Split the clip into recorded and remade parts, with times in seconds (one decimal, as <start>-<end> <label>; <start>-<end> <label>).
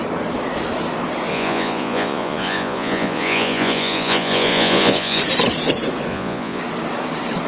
0.0-1.3 recorded; 1.3-5.2 remade; 5.2-6.1 recorded; 6.1-6.6 remade; 6.6-7.5 recorded